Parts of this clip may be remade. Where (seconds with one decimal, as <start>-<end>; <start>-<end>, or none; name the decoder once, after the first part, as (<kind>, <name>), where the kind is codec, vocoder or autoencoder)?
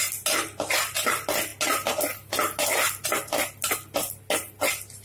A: none